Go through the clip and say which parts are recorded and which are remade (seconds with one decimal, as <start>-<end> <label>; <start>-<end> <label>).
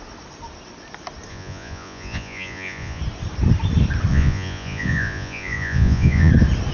0.0-1.3 recorded; 1.3-3.0 remade; 3.0-4.1 recorded; 4.1-6.3 remade; 6.3-6.7 recorded